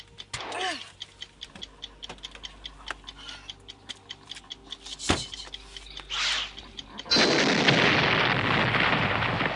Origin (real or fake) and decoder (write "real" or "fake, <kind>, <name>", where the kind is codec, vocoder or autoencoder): real